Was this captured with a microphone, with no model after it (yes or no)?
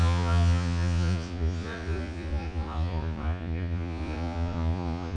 no